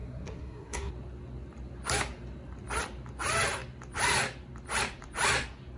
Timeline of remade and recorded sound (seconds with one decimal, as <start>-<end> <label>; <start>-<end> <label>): 0.0-0.9 remade; 0.9-5.8 recorded

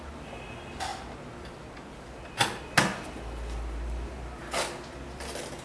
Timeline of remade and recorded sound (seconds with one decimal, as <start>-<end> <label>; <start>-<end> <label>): 0.0-5.6 recorded

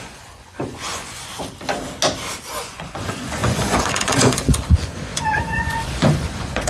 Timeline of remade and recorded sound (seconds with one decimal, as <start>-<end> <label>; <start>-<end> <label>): 0.0-1.3 remade; 1.3-2.6 recorded; 2.6-6.7 remade

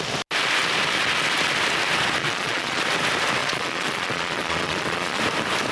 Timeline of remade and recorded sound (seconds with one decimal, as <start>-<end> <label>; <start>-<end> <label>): 0.0-2.2 recorded; 2.2-2.8 remade; 2.8-3.4 recorded; 3.4-5.2 remade; 5.2-5.7 recorded